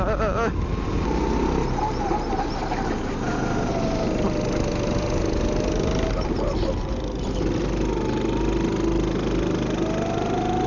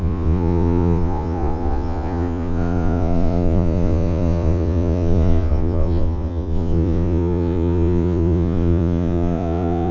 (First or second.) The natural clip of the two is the first